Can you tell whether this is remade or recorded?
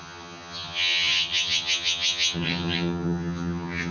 remade